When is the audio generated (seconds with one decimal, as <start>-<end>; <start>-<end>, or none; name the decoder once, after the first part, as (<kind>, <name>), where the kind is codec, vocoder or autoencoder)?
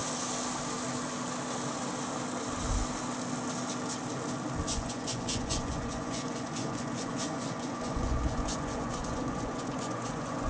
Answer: 4.7-10.5 (vocoder, Vocos)